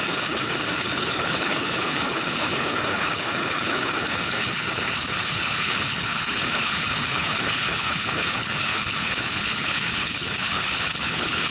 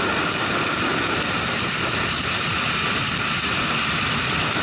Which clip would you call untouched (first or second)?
second